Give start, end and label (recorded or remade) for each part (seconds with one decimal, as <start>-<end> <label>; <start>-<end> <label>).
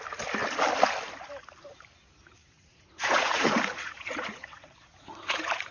0.0-2.4 recorded; 2.4-5.7 remade